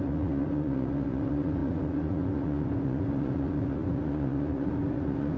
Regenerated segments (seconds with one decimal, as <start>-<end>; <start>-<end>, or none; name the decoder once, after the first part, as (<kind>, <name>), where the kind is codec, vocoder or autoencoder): 0.0-5.4 (vocoder, Vocos)